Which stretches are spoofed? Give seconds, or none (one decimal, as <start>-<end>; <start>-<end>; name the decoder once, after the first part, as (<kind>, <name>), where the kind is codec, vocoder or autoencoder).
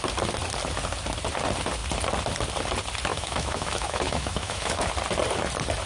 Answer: 3.1-4.9 (autoencoder, DAC-VAE)